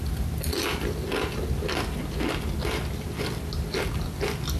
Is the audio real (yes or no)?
yes